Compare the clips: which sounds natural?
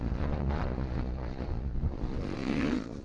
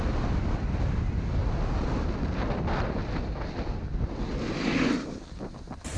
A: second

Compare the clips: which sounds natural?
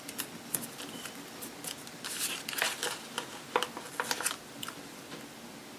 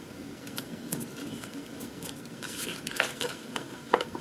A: first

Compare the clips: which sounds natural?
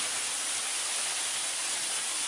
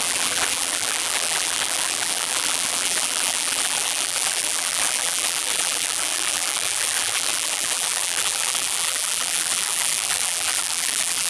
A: first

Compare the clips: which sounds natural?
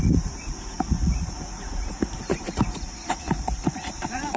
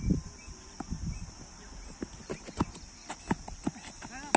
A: second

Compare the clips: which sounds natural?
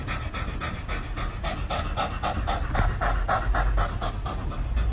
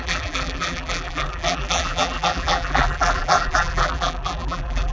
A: first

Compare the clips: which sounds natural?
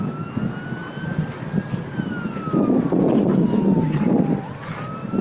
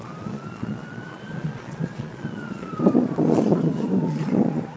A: first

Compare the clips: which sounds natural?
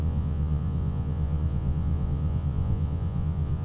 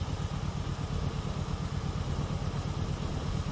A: second